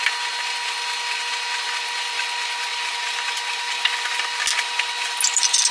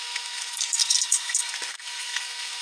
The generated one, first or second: second